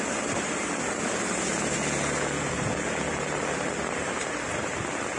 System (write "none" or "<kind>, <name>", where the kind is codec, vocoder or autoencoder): none